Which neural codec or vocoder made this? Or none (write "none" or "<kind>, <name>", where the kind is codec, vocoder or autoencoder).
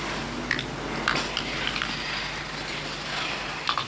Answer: none